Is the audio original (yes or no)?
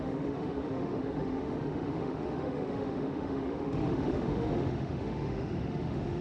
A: no